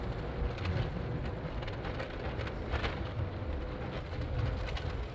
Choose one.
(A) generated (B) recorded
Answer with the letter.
B